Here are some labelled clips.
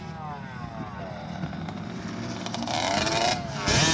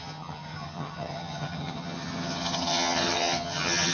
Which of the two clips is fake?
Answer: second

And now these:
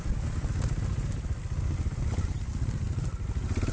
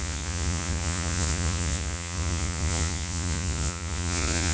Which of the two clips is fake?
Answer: second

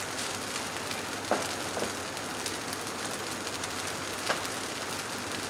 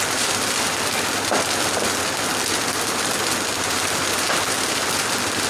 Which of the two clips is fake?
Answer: second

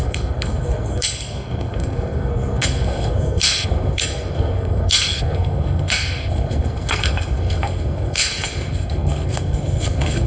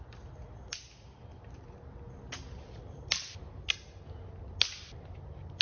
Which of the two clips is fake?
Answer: first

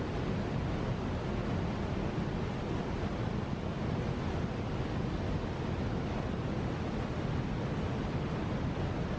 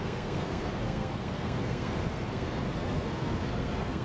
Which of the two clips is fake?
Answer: second